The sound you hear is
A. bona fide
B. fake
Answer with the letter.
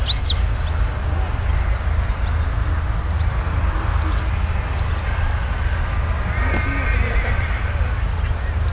A